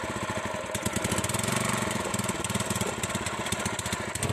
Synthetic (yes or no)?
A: yes